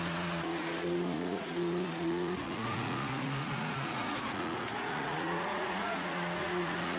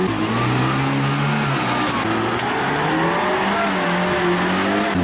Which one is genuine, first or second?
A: second